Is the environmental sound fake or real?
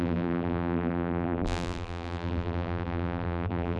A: fake